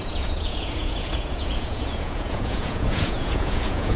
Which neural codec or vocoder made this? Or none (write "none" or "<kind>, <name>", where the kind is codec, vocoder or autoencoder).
vocoder, Vocos